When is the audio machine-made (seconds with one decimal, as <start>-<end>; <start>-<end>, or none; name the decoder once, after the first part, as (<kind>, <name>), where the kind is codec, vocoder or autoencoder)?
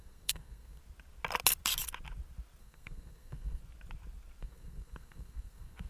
0.0-0.8 (codec, SNAC); 2.6-3.6; 4.4-5.9